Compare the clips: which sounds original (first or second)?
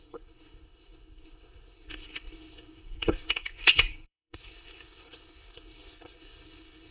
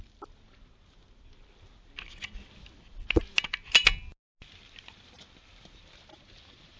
second